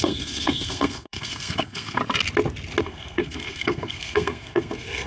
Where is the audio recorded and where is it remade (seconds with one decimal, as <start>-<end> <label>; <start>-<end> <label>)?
0.0-2.0 remade; 2.0-2.8 recorded; 2.8-5.1 remade